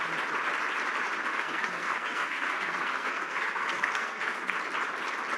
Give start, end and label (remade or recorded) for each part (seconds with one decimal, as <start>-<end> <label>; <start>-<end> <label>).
0.0-1.3 recorded; 1.3-4.5 remade; 4.5-5.4 recorded